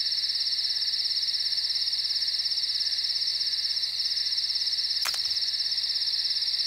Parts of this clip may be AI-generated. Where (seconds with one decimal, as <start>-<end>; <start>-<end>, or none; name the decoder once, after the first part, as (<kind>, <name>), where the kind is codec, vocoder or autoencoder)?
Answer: none